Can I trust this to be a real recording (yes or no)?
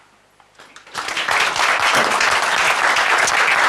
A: yes